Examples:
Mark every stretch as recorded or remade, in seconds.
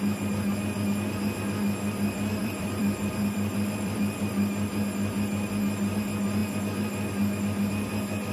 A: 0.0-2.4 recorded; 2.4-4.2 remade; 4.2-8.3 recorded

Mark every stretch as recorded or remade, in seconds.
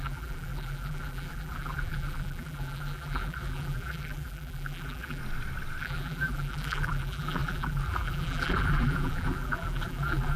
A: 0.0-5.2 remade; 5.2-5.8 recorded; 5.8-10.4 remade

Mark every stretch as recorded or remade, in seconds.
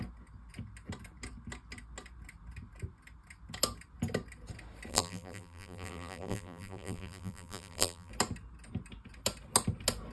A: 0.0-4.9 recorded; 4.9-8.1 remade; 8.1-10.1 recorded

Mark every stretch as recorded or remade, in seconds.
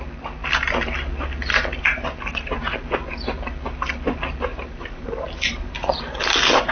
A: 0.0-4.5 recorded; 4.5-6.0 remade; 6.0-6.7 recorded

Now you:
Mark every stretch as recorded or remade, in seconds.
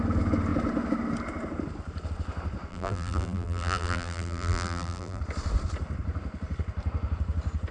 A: 0.0-2.7 recorded; 2.7-5.2 remade; 5.2-7.7 recorded